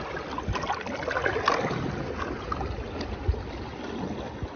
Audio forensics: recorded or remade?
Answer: recorded